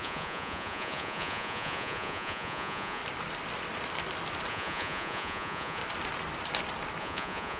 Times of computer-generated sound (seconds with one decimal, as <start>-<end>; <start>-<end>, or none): 0.0-3.0; 4.5-5.8; 7.0-7.6